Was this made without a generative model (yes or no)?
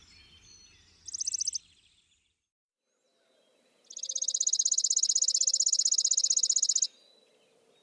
yes